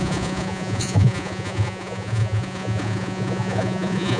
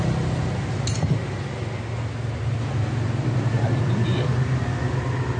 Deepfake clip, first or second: first